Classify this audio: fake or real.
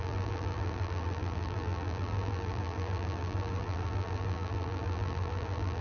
fake